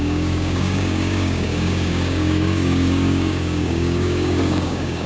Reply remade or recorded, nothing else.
remade